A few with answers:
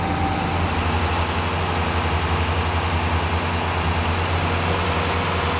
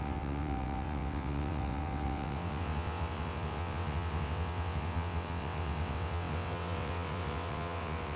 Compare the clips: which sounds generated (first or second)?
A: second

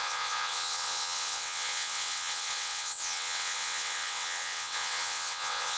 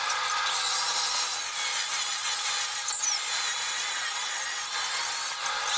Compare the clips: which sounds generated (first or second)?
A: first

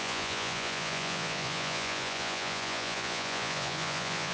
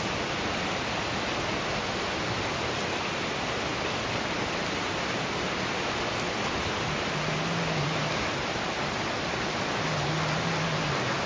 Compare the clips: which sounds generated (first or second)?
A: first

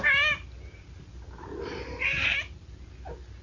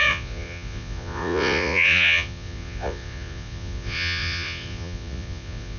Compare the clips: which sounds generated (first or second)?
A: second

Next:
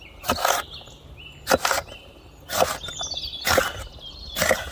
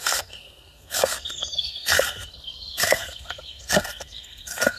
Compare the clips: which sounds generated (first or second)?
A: second